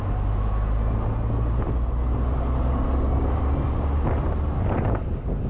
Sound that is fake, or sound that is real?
real